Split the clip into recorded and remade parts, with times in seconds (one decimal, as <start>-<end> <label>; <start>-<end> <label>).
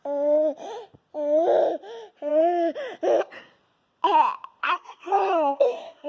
0.0-4.6 recorded; 4.6-6.1 remade